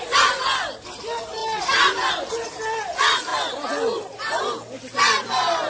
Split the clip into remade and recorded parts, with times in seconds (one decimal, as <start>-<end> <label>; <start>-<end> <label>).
0.0-5.7 recorded